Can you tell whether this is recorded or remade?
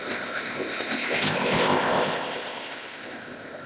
remade